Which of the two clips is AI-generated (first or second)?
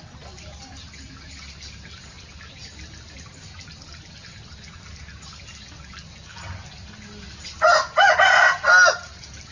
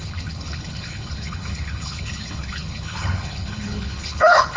second